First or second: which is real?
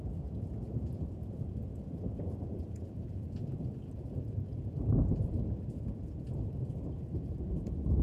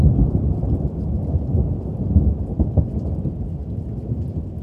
second